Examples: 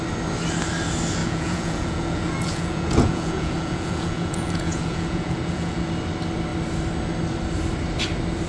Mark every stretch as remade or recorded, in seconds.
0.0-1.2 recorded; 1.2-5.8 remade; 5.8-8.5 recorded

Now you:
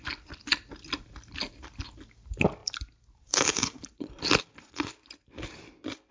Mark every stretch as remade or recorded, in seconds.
0.0-6.1 recorded

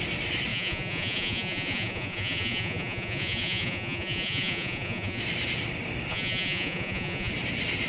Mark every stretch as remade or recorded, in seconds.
0.0-0.5 recorded; 0.5-5.2 remade; 5.2-6.1 recorded; 6.1-7.3 remade; 7.3-7.9 recorded

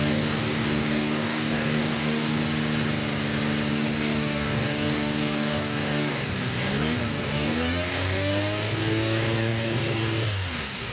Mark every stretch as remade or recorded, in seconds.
0.0-2.4 remade; 2.4-3.7 recorded; 3.7-10.9 remade

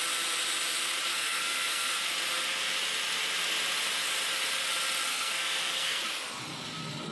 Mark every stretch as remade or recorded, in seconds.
0.0-1.1 recorded; 1.1-1.9 remade; 1.9-5.1 recorded; 5.1-6.0 remade; 6.0-7.1 recorded

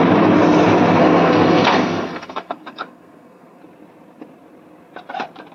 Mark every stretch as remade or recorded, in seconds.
0.0-1.0 recorded; 1.0-3.6 remade; 3.6-5.5 recorded